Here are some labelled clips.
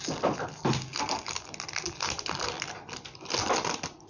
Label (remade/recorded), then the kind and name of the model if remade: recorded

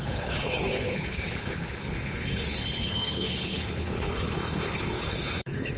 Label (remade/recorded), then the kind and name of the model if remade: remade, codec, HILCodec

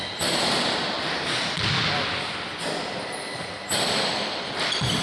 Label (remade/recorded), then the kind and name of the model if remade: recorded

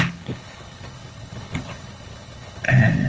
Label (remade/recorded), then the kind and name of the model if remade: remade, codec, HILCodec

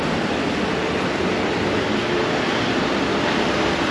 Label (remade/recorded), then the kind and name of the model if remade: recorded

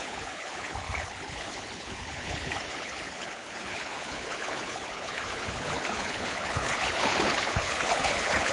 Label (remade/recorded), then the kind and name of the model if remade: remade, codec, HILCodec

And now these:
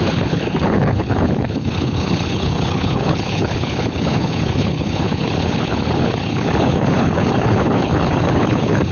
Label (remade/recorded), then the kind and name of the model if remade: remade, codec, HILCodec